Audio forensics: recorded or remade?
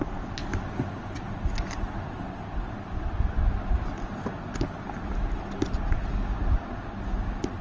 recorded